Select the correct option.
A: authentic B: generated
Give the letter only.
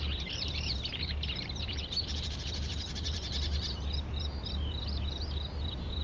B